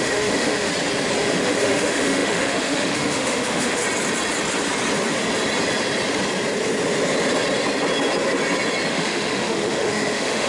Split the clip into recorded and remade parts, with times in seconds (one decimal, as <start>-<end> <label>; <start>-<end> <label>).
0.0-0.7 remade; 0.7-1.2 recorded; 1.2-3.8 remade; 3.8-8.9 recorded; 8.9-10.5 remade